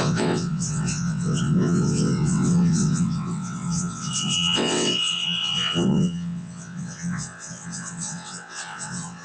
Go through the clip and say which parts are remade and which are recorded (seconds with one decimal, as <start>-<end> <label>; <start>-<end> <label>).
0.0-9.2 remade